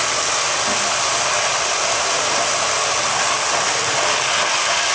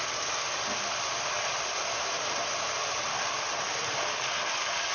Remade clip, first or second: second